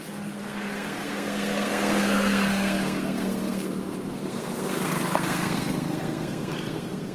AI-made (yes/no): yes